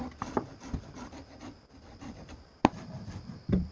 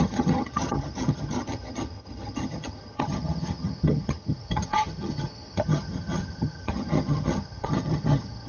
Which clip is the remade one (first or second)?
second